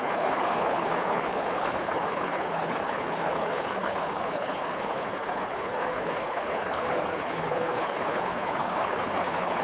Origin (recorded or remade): remade